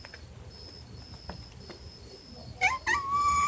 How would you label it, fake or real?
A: real